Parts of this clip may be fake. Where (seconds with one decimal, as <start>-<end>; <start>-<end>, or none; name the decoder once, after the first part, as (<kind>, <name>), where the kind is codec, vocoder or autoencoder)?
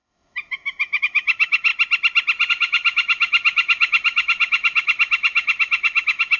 0.0-1.7 (autoencoder, DAC-VAE); 2.5-6.4